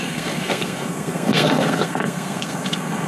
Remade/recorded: remade